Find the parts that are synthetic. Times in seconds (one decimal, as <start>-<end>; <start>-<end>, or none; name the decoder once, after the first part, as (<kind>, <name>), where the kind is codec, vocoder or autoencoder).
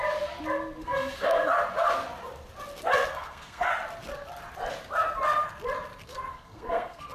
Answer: 0.8-1.5 (codec, SNAC); 3.1-3.7; 6.3-7.1